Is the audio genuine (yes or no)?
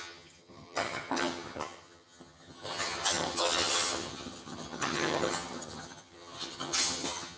no